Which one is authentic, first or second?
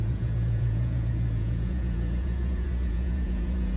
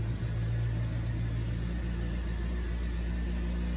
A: second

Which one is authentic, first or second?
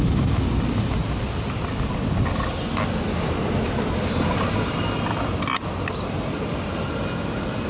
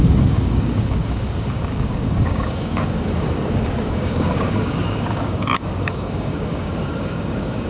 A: first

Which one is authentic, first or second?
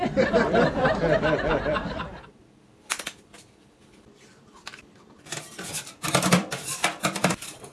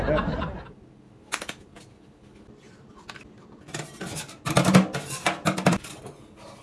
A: second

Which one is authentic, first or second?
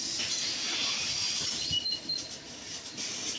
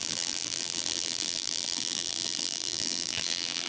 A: first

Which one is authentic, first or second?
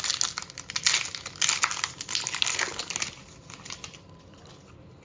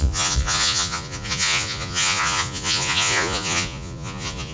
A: first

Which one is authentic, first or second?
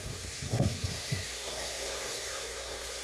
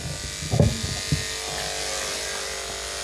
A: second